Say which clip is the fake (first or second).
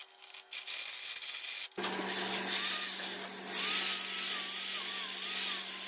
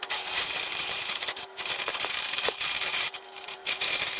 second